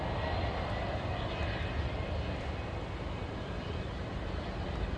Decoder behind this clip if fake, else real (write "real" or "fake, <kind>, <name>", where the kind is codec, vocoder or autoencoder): real